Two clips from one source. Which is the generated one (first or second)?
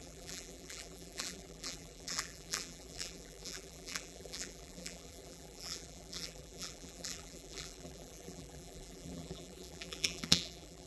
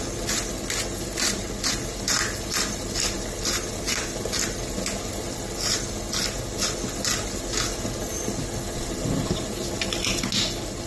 first